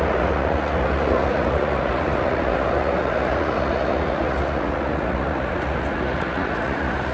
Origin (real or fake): fake